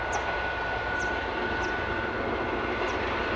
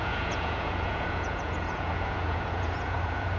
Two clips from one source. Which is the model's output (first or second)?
second